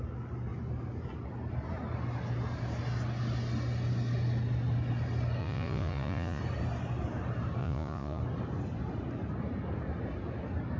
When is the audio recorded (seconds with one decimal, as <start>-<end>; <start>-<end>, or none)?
0.0-5.4; 6.4-7.6; 8.2-10.8